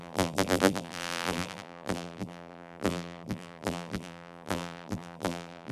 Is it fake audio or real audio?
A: fake